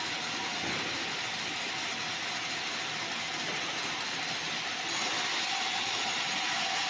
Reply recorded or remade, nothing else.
recorded